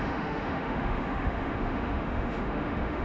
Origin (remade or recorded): remade